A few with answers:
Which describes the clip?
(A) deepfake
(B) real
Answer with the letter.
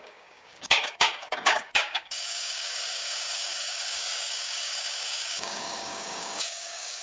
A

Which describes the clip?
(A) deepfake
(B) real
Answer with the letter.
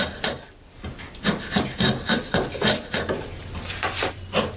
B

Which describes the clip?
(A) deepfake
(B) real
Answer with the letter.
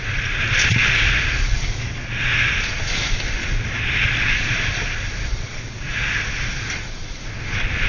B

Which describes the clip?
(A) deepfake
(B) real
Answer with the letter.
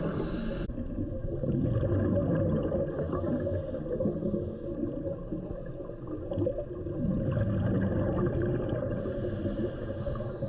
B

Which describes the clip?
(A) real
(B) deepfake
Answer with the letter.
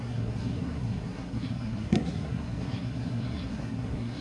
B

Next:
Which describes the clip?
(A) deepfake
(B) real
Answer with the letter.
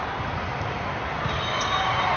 B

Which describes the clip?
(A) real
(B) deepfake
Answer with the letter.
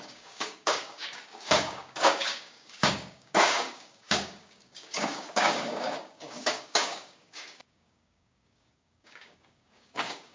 B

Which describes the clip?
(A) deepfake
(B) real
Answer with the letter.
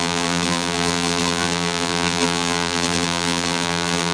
A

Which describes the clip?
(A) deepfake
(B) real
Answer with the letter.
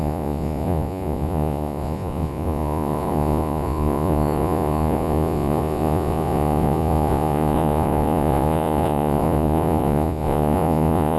A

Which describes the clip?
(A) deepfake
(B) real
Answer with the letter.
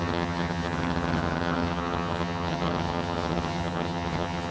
A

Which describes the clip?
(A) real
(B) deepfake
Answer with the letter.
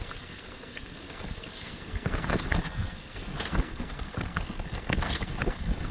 B